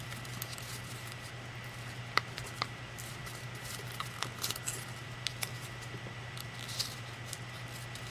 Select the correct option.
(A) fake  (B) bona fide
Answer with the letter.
B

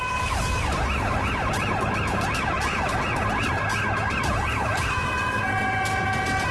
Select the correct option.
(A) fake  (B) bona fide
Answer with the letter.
B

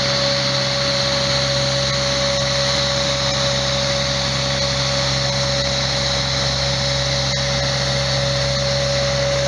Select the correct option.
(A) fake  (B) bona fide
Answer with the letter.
B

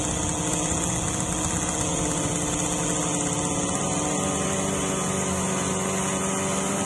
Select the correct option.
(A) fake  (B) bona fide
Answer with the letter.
B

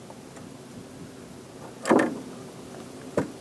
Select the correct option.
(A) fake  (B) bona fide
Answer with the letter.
B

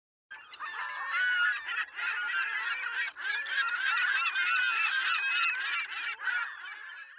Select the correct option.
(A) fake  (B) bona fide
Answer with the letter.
B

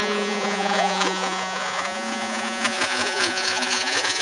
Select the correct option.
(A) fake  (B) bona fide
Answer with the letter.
A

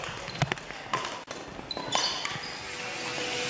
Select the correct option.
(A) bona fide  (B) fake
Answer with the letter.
A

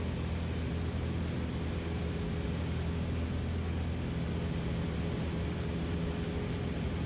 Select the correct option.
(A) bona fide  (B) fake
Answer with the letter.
A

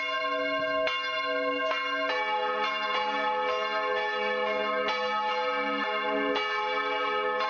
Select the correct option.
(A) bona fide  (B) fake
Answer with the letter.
A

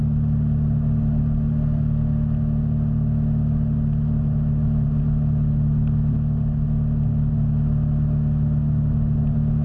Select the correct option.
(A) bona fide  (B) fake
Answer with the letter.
A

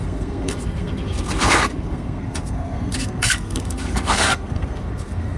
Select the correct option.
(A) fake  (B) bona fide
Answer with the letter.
A